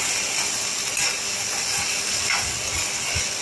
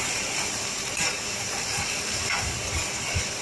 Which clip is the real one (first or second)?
first